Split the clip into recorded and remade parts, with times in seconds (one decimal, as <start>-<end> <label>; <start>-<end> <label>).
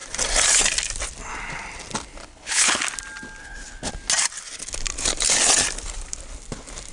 0.0-2.2 recorded; 2.2-2.8 remade; 2.8-3.4 recorded; 3.4-3.9 remade; 3.9-6.9 recorded